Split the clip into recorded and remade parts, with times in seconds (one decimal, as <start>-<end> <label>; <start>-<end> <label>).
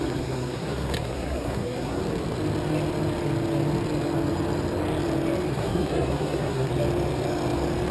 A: 0.0-2.0 remade; 2.0-5.5 recorded; 5.5-6.7 remade; 6.7-7.9 recorded